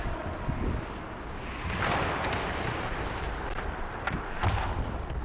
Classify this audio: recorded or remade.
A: recorded